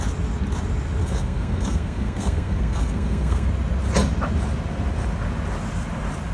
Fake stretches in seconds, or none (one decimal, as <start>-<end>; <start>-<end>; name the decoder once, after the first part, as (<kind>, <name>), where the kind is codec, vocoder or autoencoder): 1.0-3.5 (codec, SNAC)

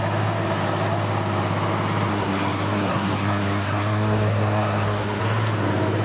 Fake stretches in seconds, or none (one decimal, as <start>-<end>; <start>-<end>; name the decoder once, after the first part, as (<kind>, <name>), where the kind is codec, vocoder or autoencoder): 2.1-5.2 (codec, SNAC)

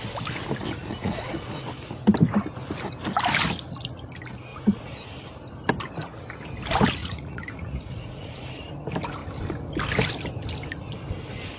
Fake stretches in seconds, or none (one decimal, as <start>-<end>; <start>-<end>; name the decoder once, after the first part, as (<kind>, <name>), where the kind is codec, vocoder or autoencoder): 1.0-1.7 (vocoder, Vocos); 4.5-5.1; 7.0-8.7